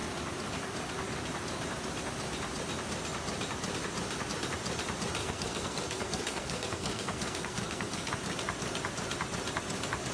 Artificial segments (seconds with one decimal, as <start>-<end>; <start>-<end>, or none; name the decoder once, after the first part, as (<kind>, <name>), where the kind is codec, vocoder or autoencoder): 5.2-8.1 (codec, SNAC)